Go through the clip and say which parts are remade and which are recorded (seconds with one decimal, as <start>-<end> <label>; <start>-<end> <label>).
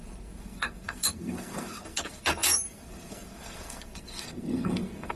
0.0-5.2 remade